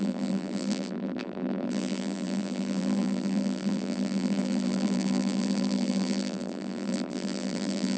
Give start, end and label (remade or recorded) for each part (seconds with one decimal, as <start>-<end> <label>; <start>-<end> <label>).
0.0-8.0 remade